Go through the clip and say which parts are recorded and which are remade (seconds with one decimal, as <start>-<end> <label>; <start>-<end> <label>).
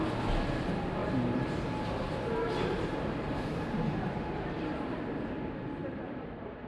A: 0.0-1.0 recorded; 1.0-5.0 remade; 5.0-5.8 recorded; 5.8-6.7 remade